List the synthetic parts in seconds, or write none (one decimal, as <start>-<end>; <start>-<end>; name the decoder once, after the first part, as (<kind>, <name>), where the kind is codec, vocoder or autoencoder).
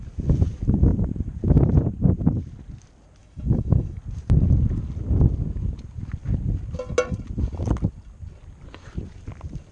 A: 3.2-4.0 (autoencoder, DAC-VAE)